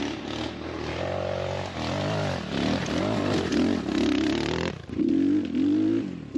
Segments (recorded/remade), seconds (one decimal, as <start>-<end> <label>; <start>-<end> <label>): 0.0-6.4 recorded